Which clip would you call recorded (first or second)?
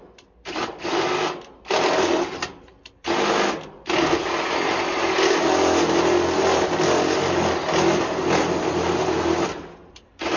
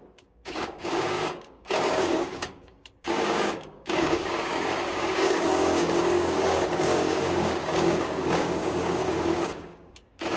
first